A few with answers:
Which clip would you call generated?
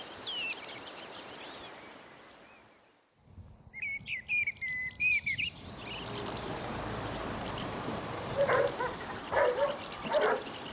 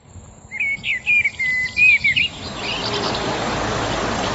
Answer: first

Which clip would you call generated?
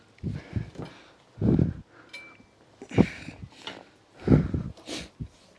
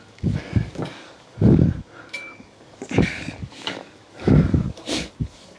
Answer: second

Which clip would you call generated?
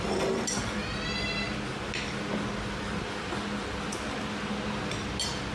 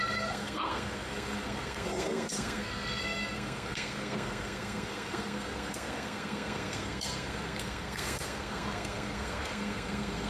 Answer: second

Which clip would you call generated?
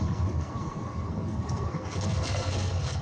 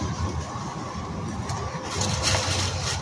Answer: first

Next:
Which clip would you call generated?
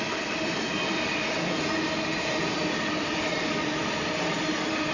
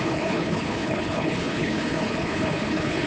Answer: second